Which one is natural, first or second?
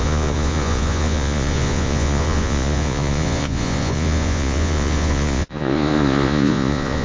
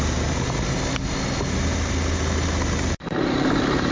second